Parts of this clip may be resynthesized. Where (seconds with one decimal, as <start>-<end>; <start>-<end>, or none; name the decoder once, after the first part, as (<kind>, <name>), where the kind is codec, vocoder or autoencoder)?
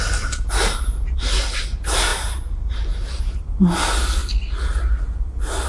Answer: none